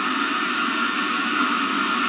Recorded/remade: remade